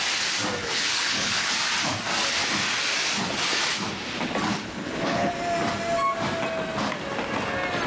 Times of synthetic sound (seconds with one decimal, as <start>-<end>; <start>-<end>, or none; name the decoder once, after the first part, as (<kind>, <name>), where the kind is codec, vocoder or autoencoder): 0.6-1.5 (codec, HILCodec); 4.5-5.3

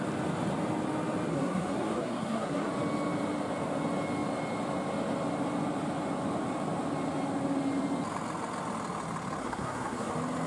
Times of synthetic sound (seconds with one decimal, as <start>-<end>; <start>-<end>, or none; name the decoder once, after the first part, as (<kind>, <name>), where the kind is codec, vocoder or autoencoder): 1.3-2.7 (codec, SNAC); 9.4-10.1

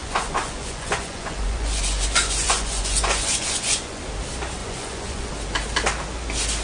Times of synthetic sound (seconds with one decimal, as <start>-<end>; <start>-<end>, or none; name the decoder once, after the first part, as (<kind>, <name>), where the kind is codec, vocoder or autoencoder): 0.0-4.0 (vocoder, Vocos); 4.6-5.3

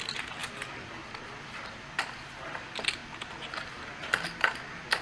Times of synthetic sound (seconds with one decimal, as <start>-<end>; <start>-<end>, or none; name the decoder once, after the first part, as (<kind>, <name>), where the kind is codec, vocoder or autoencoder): none

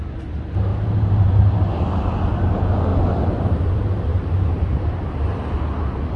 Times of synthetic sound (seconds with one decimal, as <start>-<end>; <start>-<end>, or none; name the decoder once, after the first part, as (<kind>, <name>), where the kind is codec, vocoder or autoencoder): 0.7-1.4 (vocoder, BigVGAN v2); 2.9-4.6

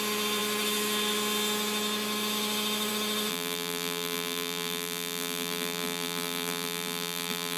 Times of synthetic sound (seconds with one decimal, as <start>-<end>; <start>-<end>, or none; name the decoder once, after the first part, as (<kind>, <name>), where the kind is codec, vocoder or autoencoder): 3.3-7.6 (vocoder, BigVGAN v2)

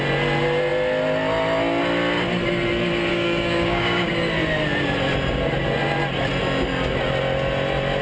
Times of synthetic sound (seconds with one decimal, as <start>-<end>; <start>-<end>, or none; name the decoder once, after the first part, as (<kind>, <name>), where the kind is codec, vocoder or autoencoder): 3.1-4.1 (codec, DAC)